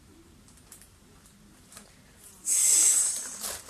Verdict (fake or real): fake